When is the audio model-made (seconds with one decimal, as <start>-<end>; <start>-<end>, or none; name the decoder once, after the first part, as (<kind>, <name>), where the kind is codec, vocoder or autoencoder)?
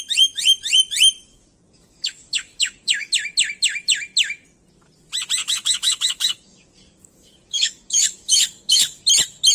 1.2-3.1 (codec, DAC); 5.4-9.0